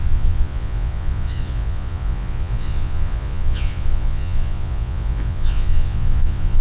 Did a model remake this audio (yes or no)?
yes